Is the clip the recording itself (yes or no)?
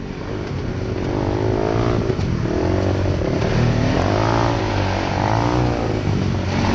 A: yes